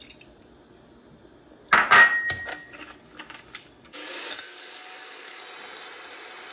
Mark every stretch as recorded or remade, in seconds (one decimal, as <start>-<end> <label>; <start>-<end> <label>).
0.0-2.5 recorded; 2.5-5.4 remade; 5.4-6.5 recorded